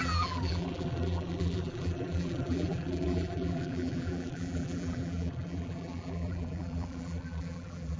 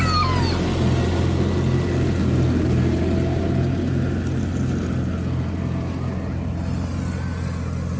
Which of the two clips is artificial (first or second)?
first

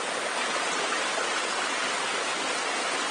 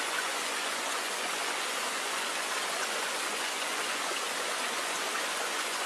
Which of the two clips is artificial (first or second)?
second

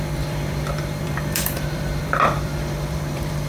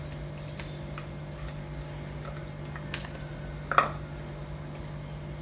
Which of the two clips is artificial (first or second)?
first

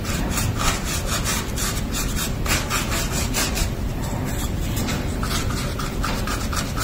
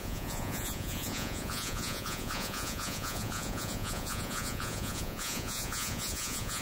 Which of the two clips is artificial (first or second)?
second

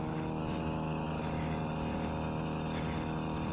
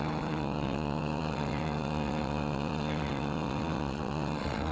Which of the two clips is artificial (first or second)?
second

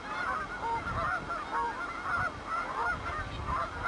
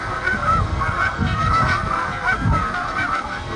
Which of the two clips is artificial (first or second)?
second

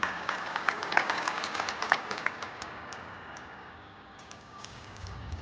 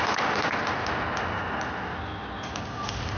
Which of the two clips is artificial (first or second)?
first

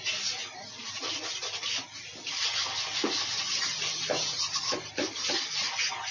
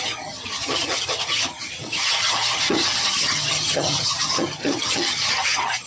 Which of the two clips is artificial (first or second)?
second